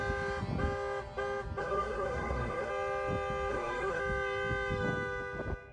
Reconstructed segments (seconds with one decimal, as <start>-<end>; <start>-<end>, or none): 1.6-2.7; 3.5-4.0